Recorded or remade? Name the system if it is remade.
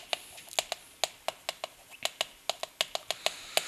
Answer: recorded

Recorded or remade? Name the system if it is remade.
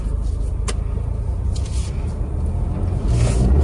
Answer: recorded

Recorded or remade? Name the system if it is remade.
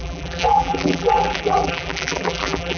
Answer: remade, vocoder, BigVGAN v2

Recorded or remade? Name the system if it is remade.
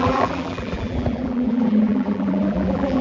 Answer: remade, vocoder, BigVGAN v2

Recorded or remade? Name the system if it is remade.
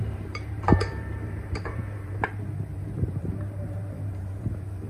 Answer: remade, vocoder, BigVGAN v2